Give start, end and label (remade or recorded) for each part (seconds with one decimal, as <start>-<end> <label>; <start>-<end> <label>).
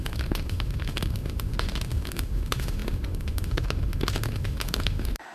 0.0-5.3 remade